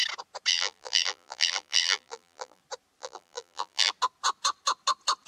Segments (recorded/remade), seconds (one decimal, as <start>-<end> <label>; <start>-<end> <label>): 0.0-0.5 recorded; 0.5-2.6 remade; 2.6-3.0 recorded; 3.0-3.9 remade; 3.9-5.3 recorded